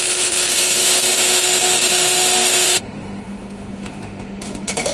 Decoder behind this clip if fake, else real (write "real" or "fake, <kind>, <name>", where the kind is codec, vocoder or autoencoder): fake, autoencoder, DAC-VAE